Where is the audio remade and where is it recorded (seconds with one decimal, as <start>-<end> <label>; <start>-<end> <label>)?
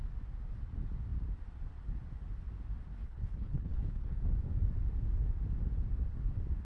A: 0.0-2.9 recorded; 2.9-4.2 remade; 4.2-6.6 recorded